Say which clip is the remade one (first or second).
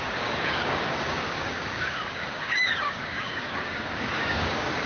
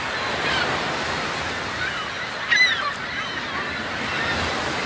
first